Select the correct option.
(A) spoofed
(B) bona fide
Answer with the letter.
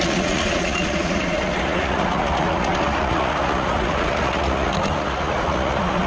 A